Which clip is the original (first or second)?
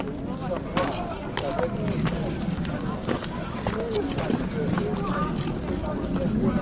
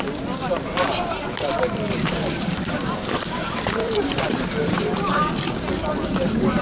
first